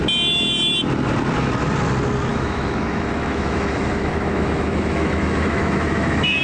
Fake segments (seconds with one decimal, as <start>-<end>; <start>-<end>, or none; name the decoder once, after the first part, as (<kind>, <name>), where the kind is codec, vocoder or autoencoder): 2.3-6.4 (autoencoder, DAC-VAE)